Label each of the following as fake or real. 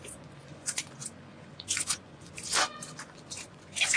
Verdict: fake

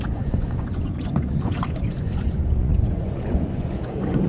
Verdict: fake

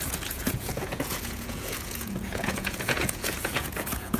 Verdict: fake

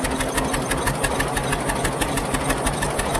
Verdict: real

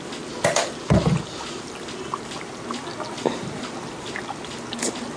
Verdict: real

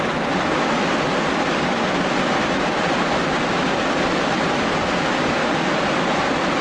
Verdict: real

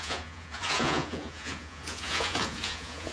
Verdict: fake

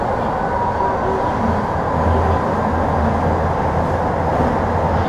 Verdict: real